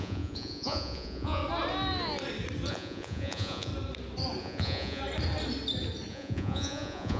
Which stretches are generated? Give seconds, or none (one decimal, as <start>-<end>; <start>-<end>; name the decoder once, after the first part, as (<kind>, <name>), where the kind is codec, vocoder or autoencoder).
0.0-1.4 (vocoder, Vocos); 2.7-3.7; 4.4-5.0; 6.1-7.2